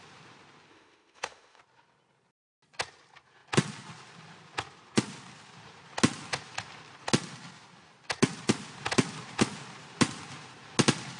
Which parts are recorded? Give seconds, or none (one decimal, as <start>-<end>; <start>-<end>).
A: 0.0-0.7; 1.6-11.2